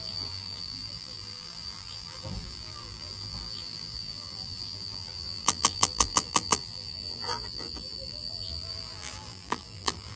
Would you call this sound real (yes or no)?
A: no